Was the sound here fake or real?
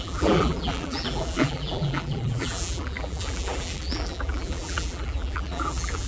fake